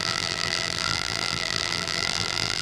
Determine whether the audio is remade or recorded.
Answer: remade